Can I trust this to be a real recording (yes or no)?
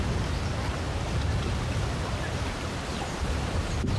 yes